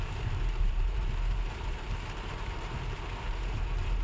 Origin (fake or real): fake